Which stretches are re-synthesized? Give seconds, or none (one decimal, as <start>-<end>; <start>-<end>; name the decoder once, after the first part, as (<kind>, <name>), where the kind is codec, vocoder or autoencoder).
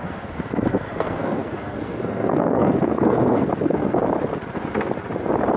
0.0-4.0 (codec, SNAC)